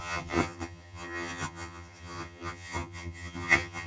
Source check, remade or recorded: remade